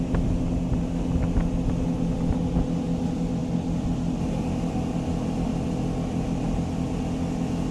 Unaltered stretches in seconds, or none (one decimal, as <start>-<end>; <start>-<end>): 0.0-7.7